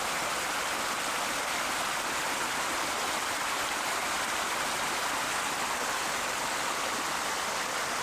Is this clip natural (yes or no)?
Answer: yes